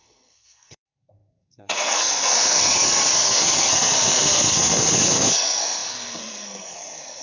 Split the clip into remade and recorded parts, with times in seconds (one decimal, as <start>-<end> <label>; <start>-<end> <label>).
0.0-7.2 remade